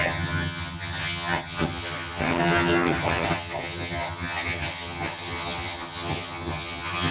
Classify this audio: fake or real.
fake